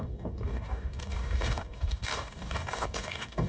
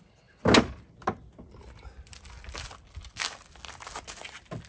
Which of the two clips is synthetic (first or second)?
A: first